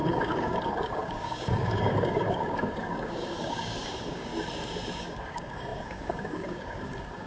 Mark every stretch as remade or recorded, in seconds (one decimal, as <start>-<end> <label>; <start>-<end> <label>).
0.0-4.3 remade; 4.3-5.0 recorded; 5.0-7.3 remade